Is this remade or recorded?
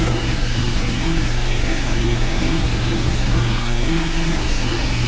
remade